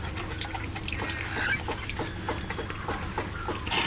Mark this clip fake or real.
real